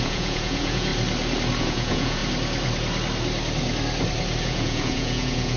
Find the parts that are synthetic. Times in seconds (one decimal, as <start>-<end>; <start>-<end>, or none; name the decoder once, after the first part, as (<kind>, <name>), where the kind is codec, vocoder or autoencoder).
0.0-0.9 (vocoder, Vocos); 1.6-2.2; 4.4-5.6